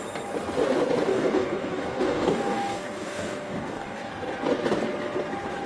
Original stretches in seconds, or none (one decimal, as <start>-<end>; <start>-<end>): 0.0-1.1; 4.1-5.7